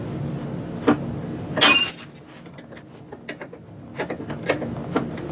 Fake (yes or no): no